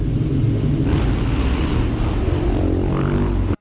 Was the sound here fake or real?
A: real